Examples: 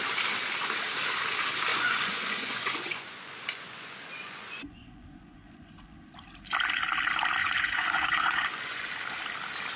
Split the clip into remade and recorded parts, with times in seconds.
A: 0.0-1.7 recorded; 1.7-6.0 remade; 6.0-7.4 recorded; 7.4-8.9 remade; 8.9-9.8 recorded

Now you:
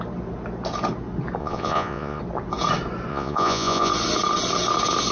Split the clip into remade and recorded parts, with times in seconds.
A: 0.0-1.4 recorded; 1.4-2.2 remade; 2.2-3.1 recorded; 3.1-3.9 remade; 3.9-5.1 recorded

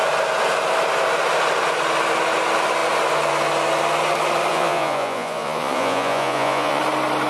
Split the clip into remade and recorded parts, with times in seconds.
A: 0.0-4.5 recorded; 4.5-6.8 remade; 6.8-7.3 recorded

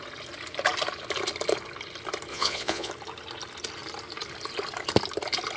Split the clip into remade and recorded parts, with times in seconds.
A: 0.0-2.3 recorded; 2.3-2.9 remade; 2.9-5.6 recorded